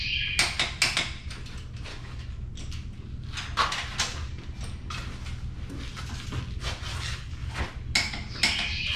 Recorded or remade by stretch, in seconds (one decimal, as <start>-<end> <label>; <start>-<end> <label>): 0.0-1.9 recorded; 1.9-2.5 remade; 2.5-6.9 recorded; 6.9-7.6 remade; 7.6-9.0 recorded

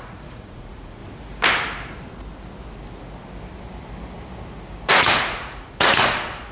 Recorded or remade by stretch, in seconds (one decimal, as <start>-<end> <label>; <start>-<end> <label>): 0.0-1.0 remade; 1.0-4.9 recorded; 4.9-6.5 remade